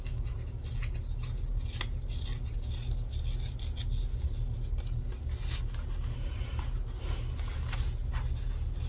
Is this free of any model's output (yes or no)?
yes